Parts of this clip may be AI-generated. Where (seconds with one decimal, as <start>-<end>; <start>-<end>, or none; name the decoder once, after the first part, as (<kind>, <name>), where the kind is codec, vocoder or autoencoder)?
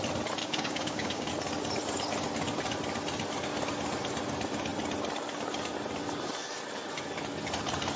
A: 0.4-1.3 (codec, DAC)